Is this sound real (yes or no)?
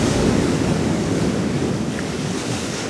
no